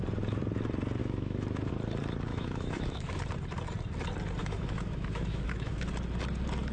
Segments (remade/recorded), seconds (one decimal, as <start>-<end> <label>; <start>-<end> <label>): 0.0-1.0 recorded; 1.0-1.7 remade; 1.7-2.3 recorded; 2.3-3.2 remade; 3.2-4.4 recorded; 4.4-5.9 remade; 5.9-6.7 recorded